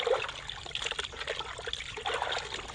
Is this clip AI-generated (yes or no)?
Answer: no